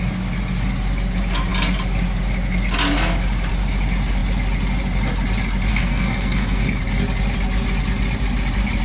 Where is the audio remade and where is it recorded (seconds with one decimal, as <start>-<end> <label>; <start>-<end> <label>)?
0.0-5.7 recorded; 5.7-6.8 remade; 6.8-8.8 recorded